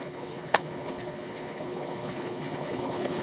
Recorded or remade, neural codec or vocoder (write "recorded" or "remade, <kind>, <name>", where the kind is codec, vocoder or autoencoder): remade, codec, HILCodec